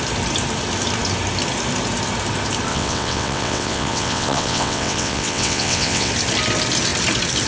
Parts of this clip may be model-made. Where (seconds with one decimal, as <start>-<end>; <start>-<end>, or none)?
2.7-6.1